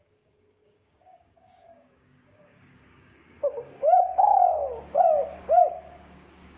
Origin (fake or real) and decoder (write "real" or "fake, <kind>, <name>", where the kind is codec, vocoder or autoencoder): fake, codec, DAC